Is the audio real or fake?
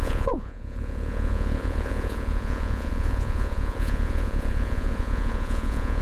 fake